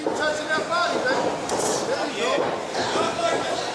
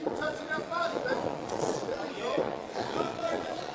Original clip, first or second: first